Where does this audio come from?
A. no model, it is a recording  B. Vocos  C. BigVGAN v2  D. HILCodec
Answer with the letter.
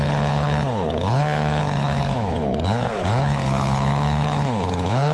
D